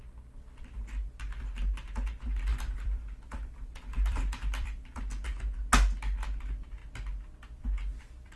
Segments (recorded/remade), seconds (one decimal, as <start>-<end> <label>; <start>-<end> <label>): 0.0-2.5 recorded; 2.5-5.0 remade; 5.0-8.4 recorded